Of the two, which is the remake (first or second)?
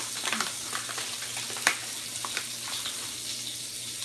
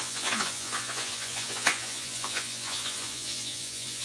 second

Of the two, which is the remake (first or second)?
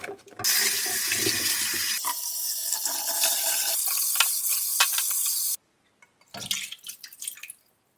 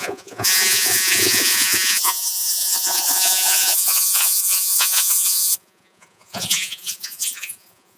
second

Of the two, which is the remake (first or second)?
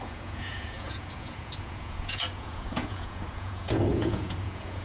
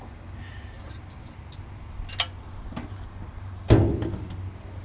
first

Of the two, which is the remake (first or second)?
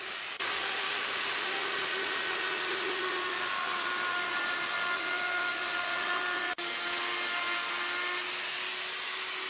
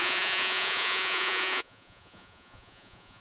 second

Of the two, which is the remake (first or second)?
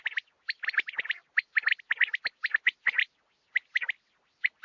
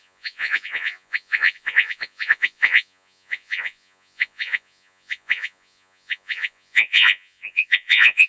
second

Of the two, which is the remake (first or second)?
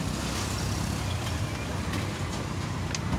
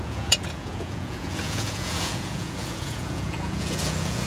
second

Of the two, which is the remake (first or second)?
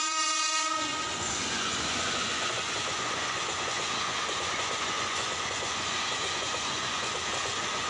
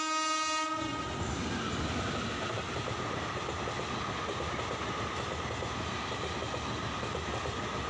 first